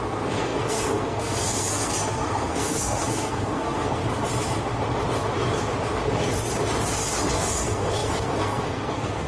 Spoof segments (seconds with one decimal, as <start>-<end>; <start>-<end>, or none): 0.0-4.0; 7.3-9.3